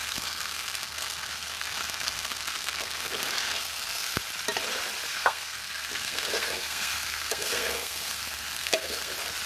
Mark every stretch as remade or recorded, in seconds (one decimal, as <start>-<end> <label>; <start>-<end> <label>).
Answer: 0.0-4.2 remade; 4.2-5.1 recorded; 5.1-9.1 remade; 9.1-9.5 recorded